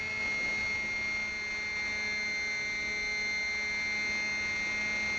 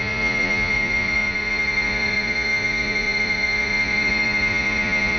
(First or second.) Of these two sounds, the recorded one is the first